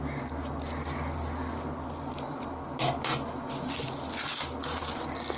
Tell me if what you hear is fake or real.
real